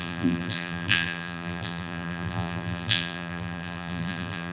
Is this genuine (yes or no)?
no